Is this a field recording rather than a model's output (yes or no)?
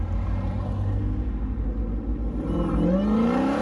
yes